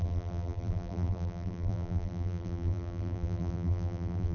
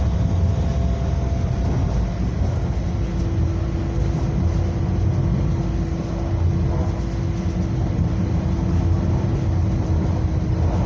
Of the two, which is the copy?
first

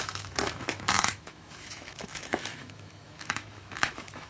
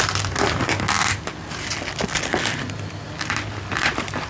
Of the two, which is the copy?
first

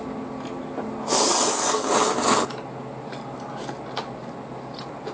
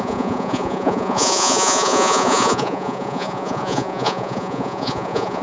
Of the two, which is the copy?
second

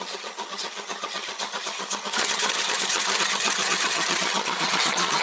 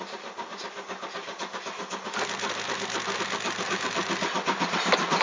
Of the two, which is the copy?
first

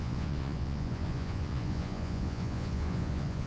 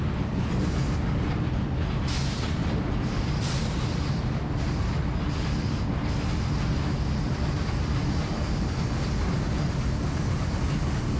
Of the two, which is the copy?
first